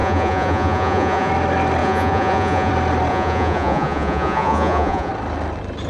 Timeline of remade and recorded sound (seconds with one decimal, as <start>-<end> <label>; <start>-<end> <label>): 0.0-1.3 remade; 1.3-1.8 recorded; 1.8-2.7 remade; 2.7-3.1 recorded; 3.1-5.1 remade; 5.1-5.9 recorded